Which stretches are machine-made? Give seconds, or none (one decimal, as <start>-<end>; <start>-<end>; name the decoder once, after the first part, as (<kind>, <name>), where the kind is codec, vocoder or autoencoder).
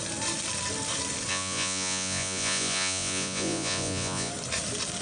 1.3-4.3 (vocoder, Vocos)